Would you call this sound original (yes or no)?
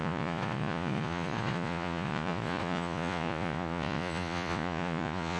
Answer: no